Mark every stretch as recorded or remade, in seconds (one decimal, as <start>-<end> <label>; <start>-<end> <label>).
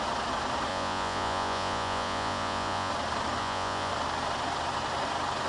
0.0-0.7 recorded; 0.7-2.9 remade; 2.9-3.4 recorded; 3.4-3.9 remade; 3.9-5.5 recorded